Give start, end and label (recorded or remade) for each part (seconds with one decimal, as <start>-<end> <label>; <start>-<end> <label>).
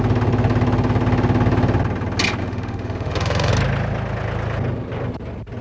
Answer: 0.0-2.4 recorded; 2.4-3.5 remade; 3.5-5.6 recorded